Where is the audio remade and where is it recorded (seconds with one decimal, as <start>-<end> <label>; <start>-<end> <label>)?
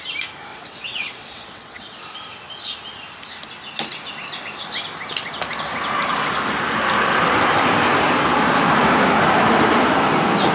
0.0-0.5 recorded; 0.5-2.0 remade; 2.0-10.5 recorded